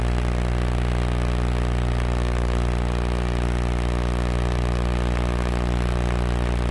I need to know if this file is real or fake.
real